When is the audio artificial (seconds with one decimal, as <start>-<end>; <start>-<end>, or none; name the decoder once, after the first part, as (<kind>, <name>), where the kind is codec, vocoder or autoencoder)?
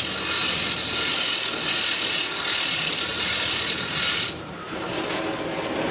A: 0.4-1.1 (vocoder, BigVGAN v2); 3.1-4.9